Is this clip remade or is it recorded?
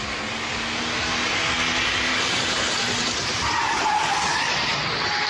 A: recorded